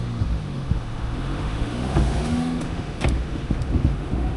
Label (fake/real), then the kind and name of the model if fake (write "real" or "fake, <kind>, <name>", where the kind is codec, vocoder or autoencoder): fake, autoencoder, DAC-VAE